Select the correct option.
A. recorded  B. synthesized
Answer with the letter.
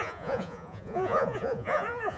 B